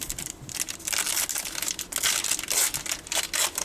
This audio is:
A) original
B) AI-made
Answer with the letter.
A